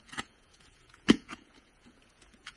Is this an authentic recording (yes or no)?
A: no